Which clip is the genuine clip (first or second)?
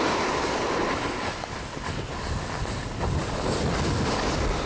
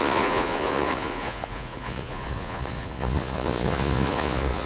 first